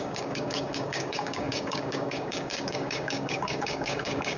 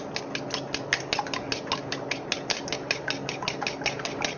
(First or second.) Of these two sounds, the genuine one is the second